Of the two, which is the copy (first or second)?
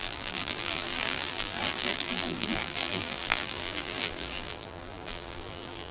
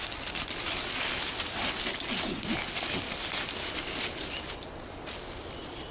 first